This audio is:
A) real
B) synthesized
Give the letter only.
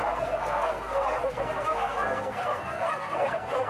B